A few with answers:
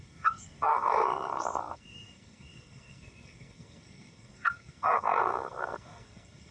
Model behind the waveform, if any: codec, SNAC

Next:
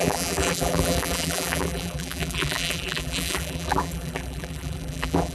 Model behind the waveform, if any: vocoder, BigVGAN v2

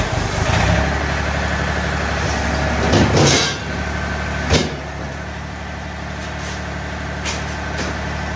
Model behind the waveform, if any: none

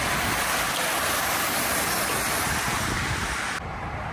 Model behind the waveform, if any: none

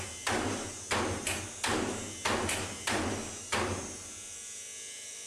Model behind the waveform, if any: none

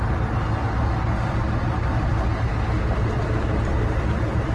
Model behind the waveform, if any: none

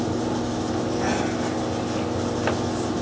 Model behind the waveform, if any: none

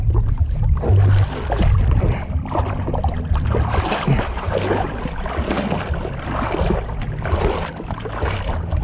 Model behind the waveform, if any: none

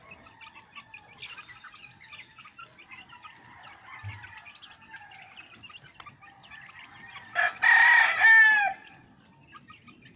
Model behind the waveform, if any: none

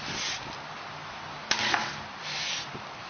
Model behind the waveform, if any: none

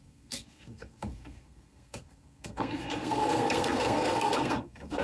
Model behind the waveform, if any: codec, SNAC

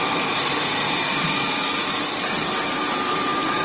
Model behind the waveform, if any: vocoder, BigVGAN v2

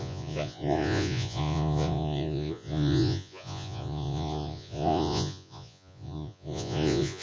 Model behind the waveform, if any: vocoder, Vocos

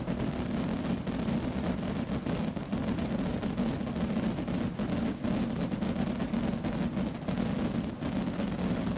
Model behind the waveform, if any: none